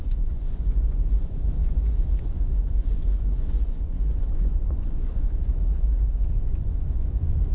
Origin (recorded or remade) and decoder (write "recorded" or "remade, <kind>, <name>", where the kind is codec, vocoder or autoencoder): remade, vocoder, Vocos